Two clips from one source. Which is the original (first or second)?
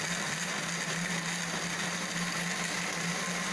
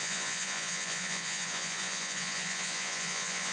first